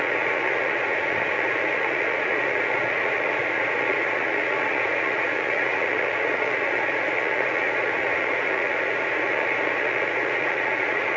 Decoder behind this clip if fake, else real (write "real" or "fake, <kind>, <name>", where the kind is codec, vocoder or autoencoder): fake, vocoder, Vocos